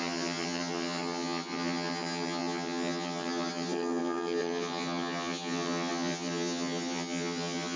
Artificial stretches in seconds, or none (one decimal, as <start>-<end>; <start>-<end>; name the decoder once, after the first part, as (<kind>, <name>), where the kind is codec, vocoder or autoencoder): 0.0-7.8 (vocoder, HiFi-GAN)